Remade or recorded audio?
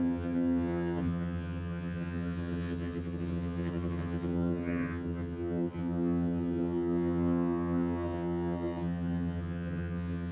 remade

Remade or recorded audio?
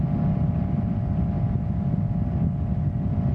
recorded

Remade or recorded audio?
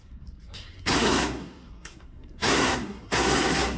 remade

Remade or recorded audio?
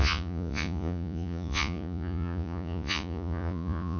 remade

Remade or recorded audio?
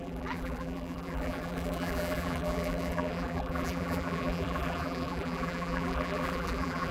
remade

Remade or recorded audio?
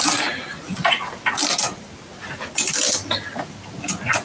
recorded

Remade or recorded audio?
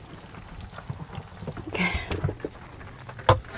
recorded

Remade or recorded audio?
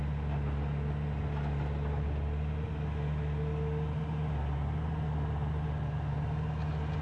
recorded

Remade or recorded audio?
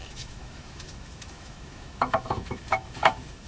remade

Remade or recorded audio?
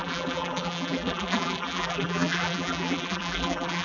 remade